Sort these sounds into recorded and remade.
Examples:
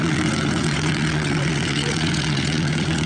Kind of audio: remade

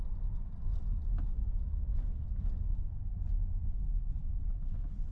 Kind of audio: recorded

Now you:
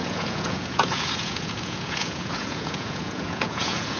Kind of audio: remade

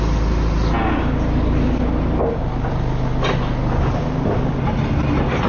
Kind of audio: recorded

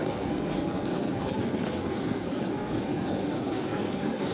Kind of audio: remade